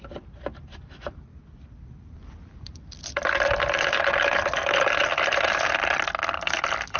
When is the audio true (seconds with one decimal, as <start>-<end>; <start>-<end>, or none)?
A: 0.0-7.0